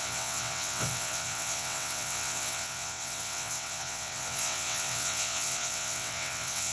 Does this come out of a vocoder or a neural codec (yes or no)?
yes